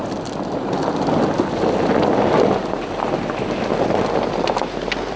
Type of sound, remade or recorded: recorded